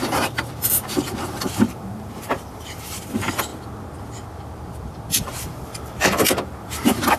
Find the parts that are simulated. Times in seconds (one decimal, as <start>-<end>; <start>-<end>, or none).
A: 0.0-3.5; 5.1-7.2